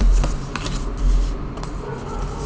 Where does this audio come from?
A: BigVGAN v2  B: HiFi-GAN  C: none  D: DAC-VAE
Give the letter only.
C